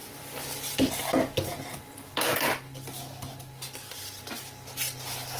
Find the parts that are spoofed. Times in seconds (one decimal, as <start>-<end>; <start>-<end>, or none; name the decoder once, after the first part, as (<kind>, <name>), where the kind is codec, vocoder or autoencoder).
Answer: none